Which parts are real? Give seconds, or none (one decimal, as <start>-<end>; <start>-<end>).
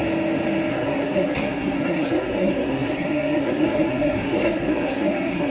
0.0-0.7